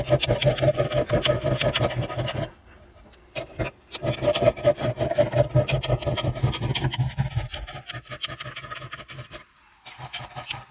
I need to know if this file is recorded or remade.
recorded